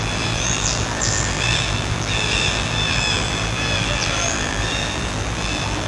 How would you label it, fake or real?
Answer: fake